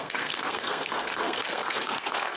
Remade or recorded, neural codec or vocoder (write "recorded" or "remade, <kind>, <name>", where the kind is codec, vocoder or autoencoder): remade, codec, SNAC